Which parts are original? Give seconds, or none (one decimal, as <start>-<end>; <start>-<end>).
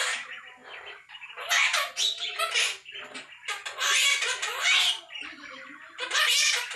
0.0-6.8